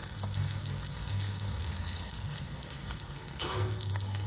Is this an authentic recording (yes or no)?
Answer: no